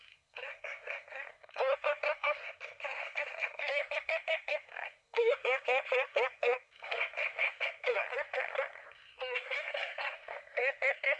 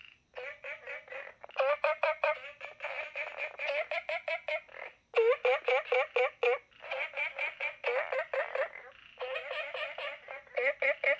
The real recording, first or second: second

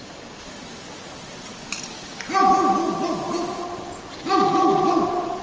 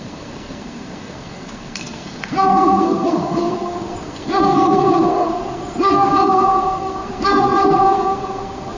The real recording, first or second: first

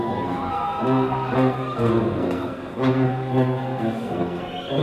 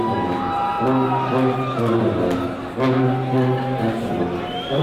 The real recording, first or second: second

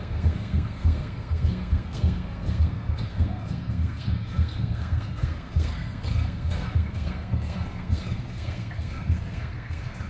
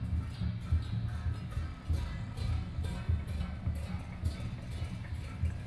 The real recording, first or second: second